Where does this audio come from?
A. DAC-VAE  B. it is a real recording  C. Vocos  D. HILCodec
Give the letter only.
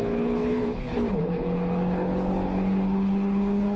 D